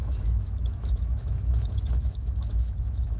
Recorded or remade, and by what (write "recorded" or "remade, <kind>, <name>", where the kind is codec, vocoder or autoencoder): remade, autoencoder, DAC-VAE